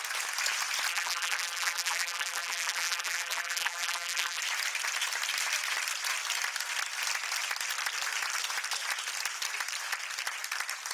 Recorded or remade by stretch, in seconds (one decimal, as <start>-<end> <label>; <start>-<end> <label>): 0.0-0.9 recorded; 0.9-4.4 remade; 4.4-10.9 recorded